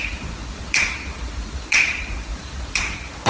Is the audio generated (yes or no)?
yes